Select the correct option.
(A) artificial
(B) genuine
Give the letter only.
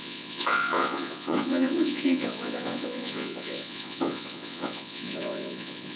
A